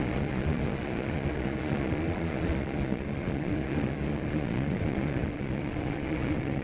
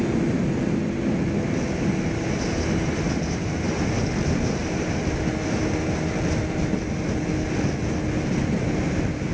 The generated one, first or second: first